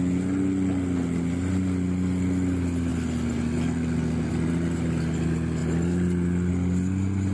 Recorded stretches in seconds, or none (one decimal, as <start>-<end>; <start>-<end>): 0.0-7.3